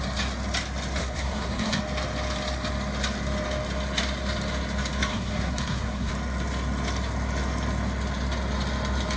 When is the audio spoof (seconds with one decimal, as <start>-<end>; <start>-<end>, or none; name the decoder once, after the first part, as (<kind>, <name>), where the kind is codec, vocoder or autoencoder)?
1.0-1.8 (codec, SNAC); 5.1-6.1